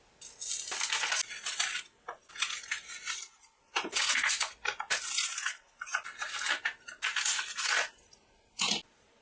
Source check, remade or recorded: recorded